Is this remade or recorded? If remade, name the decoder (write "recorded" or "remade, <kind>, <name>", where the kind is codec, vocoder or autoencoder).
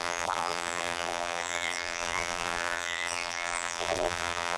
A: remade, vocoder, BigVGAN v2